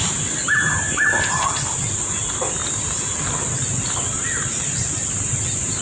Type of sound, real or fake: real